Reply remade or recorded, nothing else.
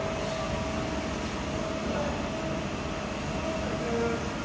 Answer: recorded